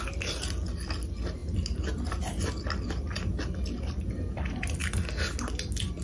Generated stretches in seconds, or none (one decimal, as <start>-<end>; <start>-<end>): none